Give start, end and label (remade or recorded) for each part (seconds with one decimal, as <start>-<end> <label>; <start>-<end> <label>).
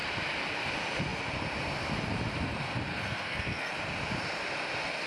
0.0-2.9 recorded; 2.9-3.7 remade; 3.7-5.1 recorded